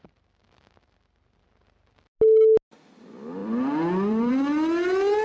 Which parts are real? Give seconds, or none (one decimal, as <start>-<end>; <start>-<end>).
0.0-3.4; 4.3-5.2